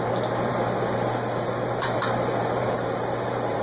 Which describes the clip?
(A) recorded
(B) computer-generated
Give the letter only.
B